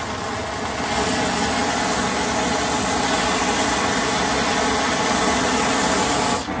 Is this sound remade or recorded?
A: recorded